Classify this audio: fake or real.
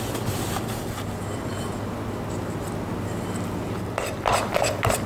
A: real